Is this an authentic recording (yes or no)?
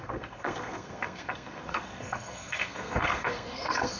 no